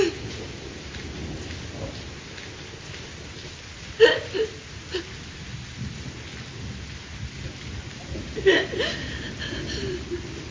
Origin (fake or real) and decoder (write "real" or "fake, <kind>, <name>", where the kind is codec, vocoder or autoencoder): real